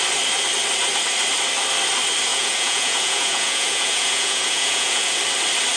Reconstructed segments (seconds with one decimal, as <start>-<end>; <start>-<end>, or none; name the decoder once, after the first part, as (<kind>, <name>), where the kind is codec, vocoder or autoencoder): 2.3-5.2 (vocoder, Vocos)